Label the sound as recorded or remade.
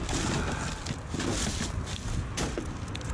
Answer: recorded